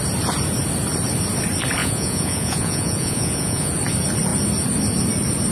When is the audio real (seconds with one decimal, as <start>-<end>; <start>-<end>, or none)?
0.0-1.8; 3.7-5.5